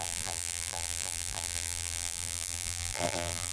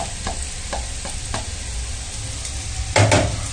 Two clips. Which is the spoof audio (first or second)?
first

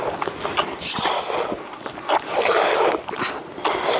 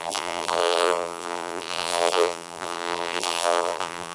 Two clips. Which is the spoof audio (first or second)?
second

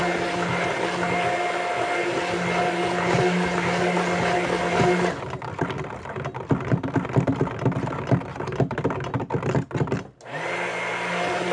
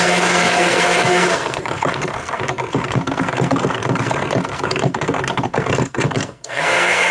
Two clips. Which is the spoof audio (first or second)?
second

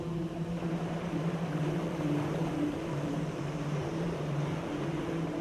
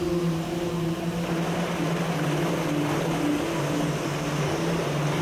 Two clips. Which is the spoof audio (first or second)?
first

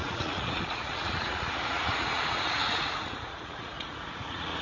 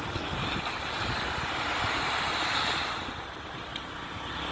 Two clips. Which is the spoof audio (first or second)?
first